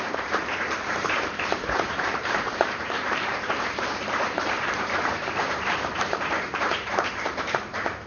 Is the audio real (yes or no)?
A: no